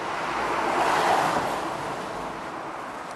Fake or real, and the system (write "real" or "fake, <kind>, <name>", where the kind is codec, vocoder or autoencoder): real